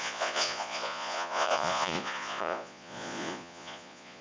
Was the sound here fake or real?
fake